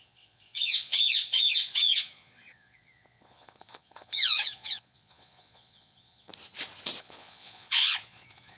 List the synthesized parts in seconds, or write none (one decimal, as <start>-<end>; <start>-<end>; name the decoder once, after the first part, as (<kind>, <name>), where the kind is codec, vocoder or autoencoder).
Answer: 0.0-6.3 (vocoder, Vocos); 7.0-8.6